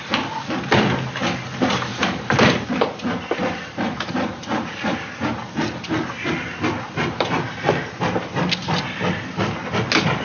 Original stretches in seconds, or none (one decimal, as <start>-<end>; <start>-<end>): 0.0-1.9; 2.5-3.4; 5.4-10.2